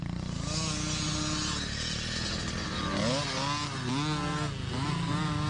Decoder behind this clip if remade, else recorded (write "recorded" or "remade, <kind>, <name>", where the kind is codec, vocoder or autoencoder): recorded